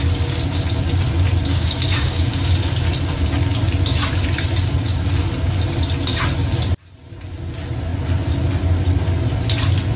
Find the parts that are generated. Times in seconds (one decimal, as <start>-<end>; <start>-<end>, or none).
1.5-2.5